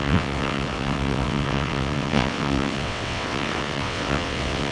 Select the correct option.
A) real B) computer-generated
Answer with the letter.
B